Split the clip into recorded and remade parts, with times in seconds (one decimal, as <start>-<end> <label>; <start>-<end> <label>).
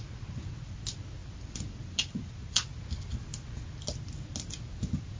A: 0.0-5.2 recorded